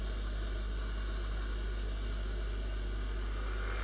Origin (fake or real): real